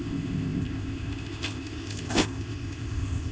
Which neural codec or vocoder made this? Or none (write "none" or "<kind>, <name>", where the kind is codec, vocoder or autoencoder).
codec, ZipCodec